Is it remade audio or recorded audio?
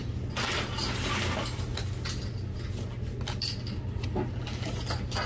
recorded